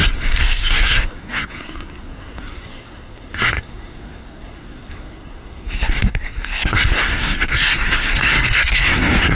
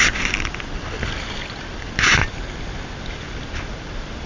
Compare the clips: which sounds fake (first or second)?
first